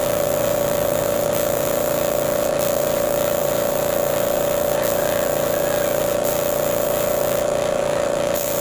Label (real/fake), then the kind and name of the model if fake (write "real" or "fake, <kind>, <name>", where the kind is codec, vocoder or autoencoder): fake, vocoder, BigVGAN v2